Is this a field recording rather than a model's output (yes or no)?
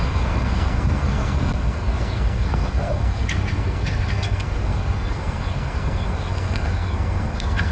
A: no